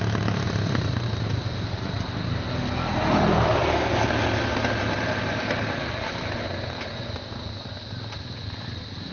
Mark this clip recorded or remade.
recorded